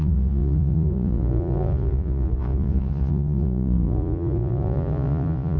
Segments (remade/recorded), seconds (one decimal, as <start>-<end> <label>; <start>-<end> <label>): 0.0-5.6 remade